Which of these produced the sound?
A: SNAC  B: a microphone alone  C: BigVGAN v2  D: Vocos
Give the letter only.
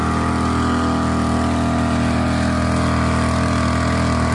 B